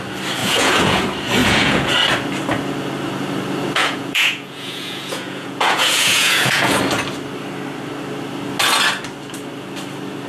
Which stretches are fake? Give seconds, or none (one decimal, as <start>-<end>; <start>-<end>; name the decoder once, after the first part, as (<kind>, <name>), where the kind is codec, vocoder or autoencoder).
0.4-1.0 (vocoder, Vocos); 1.4-1.9; 3.8-6.8